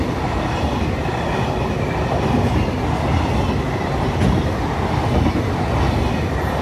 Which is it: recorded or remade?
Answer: recorded